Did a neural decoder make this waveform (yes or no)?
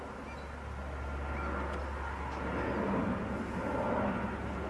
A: no